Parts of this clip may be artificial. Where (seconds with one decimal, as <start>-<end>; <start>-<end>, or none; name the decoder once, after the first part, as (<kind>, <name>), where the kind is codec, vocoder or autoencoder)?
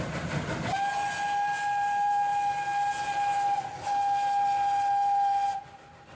none